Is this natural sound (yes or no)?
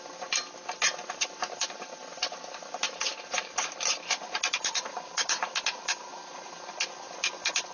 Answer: yes